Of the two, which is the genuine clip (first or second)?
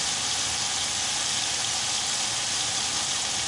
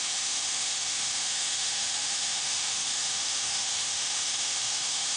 first